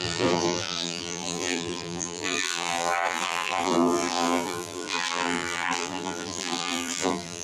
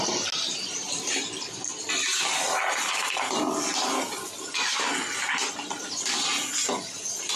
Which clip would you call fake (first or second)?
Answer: first